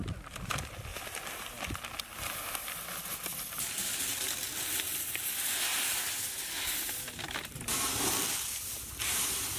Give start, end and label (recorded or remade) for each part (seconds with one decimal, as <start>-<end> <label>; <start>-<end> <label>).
0.0-0.9 recorded; 0.9-1.6 remade; 1.6-3.8 recorded; 3.8-5.3 remade; 5.3-5.7 recorded; 5.7-6.4 remade; 6.4-9.6 recorded